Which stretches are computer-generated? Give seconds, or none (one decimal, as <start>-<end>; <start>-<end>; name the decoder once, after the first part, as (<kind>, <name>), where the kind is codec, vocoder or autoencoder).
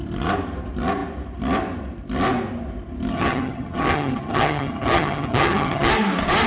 3.1-5.9 (vocoder, HiFi-GAN)